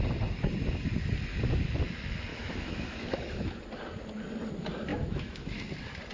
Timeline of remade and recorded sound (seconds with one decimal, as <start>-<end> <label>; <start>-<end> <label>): 0.0-2.3 recorded; 2.3-3.6 remade; 3.6-4.9 recorded; 4.9-5.6 remade; 5.6-6.1 recorded